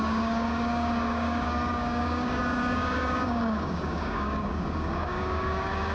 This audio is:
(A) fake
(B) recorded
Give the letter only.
A